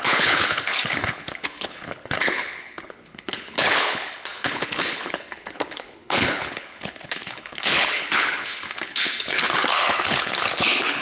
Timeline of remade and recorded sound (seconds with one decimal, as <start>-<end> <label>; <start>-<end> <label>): 0.0-11.0 remade